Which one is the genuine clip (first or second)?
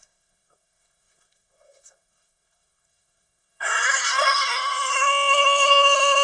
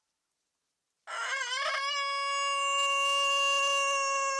second